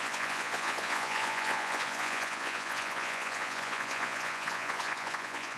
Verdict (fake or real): fake